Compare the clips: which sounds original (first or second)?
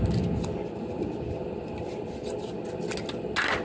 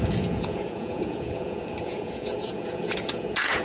first